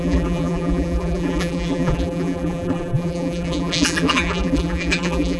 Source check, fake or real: fake